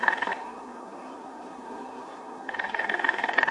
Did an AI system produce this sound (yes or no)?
yes